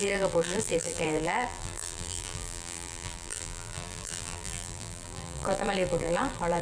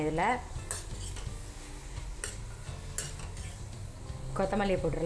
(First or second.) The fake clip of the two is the first